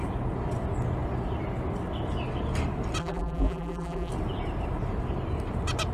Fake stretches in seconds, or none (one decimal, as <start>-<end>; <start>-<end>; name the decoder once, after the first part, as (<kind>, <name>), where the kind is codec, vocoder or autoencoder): 3.0-4.1 (vocoder, BigVGAN v2)